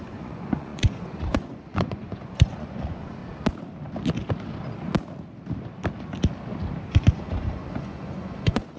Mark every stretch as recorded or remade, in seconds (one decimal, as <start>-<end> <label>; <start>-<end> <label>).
0.0-3.2 remade; 3.2-6.9 recorded; 6.9-8.8 remade